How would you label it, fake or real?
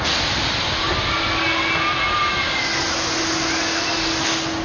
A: real